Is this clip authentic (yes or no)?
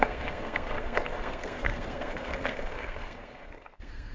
no